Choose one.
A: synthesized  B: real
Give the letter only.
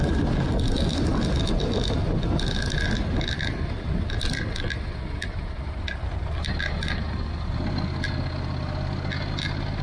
B